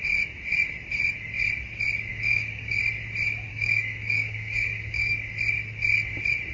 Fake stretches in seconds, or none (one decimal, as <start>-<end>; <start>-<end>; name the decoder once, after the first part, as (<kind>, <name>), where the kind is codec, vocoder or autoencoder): 2.1-2.8 (codec, DAC); 3.5-5.3

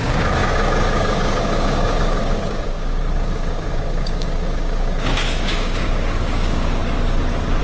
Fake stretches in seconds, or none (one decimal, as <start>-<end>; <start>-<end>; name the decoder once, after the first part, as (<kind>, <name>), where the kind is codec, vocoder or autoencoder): 0.0-6.8 (codec, DAC)